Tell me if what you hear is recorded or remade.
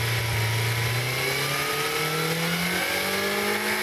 recorded